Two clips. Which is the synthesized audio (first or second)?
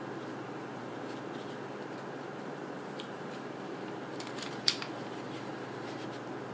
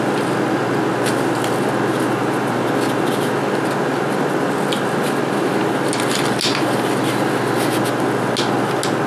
first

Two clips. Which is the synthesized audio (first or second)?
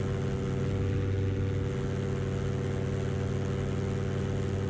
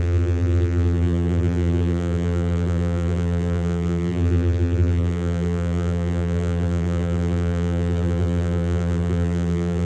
second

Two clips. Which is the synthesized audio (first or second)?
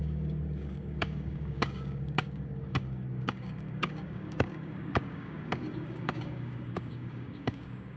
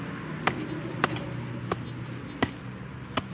first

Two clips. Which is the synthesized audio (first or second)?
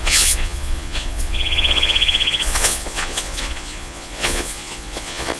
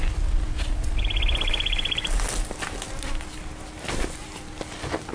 first